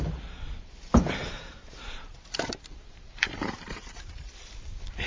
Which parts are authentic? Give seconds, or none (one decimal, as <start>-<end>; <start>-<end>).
0.0-1.2; 4.3-5.1